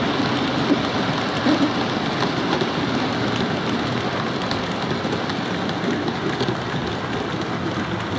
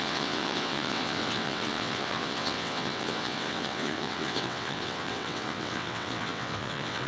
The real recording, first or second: first